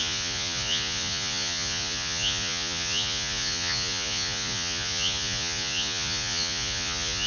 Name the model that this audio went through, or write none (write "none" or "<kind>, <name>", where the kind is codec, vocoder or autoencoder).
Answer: vocoder, Vocos